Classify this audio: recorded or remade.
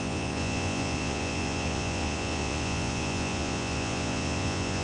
remade